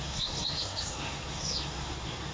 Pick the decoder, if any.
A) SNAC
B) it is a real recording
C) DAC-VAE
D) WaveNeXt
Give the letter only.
A